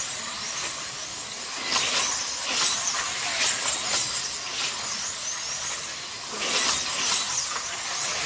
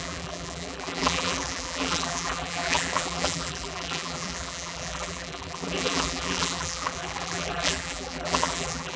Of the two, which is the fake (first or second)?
second